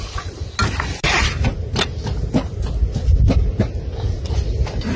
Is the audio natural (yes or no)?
yes